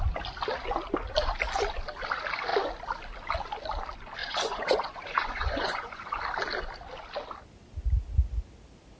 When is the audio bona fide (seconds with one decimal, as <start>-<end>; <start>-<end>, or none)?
0.0-4.2; 6.2-9.0